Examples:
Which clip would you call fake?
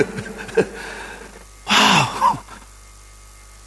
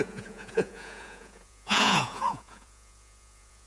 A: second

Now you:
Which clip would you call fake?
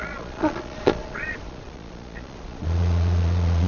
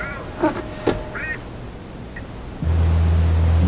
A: first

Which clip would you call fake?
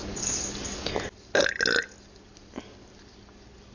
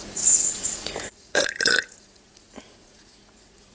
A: second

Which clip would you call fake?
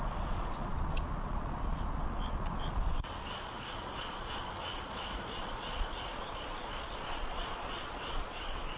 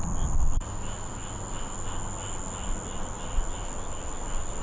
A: first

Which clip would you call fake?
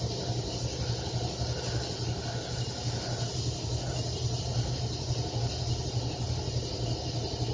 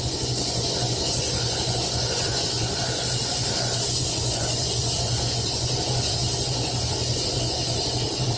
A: second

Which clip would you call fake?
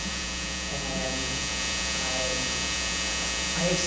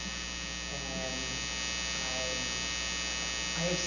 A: first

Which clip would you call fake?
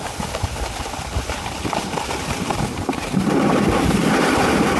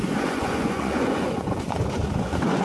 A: second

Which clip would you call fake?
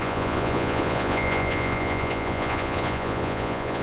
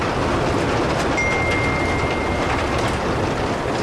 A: first